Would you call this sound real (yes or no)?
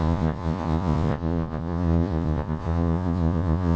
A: no